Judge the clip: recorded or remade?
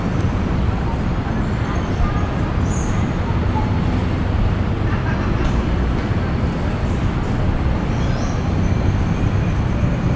recorded